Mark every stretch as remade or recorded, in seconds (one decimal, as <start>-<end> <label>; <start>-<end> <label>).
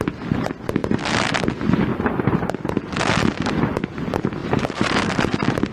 0.0-4.4 recorded; 4.4-5.0 remade; 5.0-5.7 recorded